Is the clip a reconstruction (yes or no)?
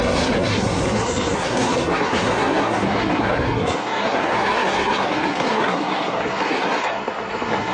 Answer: yes